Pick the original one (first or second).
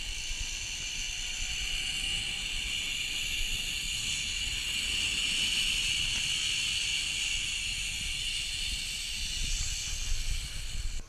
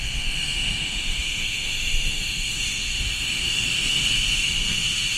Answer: first